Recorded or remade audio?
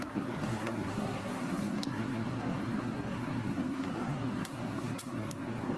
remade